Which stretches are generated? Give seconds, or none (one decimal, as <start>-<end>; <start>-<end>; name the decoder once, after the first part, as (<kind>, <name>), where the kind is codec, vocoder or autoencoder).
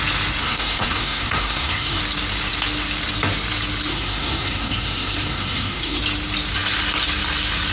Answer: 0.4-2.0 (codec, SNAC); 3.9-6.0